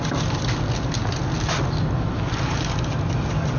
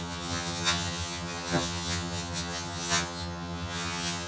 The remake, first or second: second